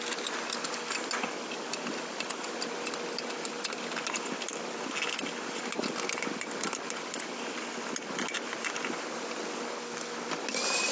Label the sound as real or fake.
real